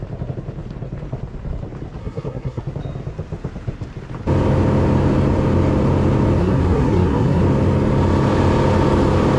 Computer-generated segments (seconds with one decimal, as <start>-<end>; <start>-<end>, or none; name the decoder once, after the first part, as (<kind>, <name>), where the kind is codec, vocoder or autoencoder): 2.0-2.6 (codec, SNAC); 6.4-7.4